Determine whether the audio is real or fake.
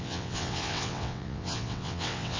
fake